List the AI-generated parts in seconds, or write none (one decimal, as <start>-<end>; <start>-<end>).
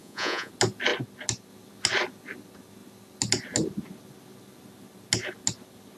0.0-0.5